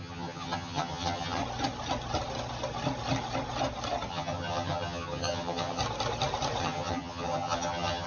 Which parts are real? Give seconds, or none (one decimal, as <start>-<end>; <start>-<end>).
1.4-4.1; 5.8-6.6